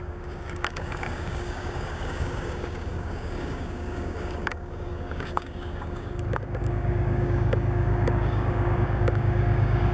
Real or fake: fake